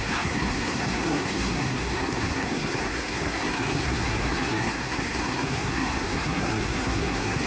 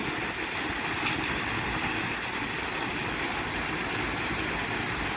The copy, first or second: first